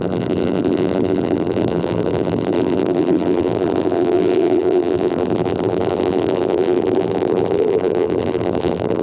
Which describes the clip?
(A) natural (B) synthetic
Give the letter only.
B